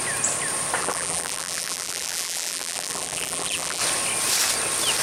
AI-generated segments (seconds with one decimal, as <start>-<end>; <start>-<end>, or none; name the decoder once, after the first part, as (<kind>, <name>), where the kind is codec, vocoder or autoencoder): 0.8-3.8 (vocoder, BigVGAN v2)